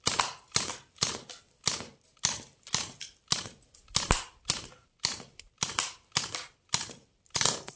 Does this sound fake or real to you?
real